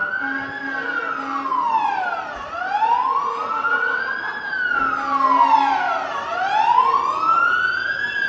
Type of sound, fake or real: real